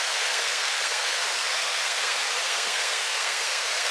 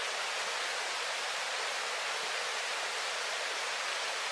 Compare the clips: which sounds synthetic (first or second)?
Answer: first